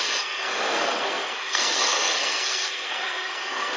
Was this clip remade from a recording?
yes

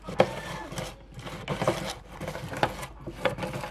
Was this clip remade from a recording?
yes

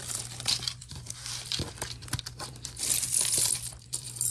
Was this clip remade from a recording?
yes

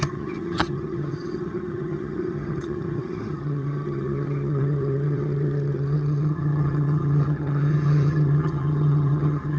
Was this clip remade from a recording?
yes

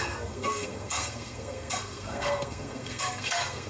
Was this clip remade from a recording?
yes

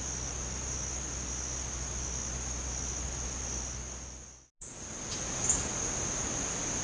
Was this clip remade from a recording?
no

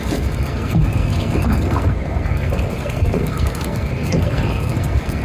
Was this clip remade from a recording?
yes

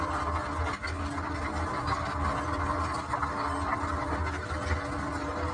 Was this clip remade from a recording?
no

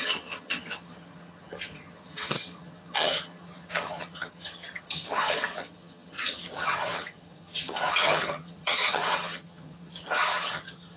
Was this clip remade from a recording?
yes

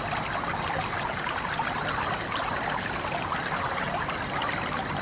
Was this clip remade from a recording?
no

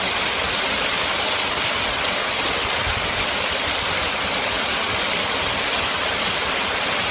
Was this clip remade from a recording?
no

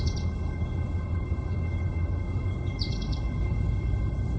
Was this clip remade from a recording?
yes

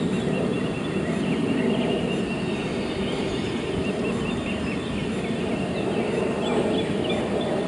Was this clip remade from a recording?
no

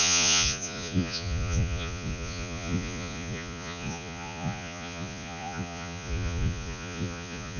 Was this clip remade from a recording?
yes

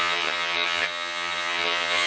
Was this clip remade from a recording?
yes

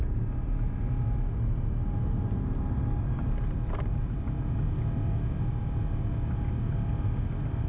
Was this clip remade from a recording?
no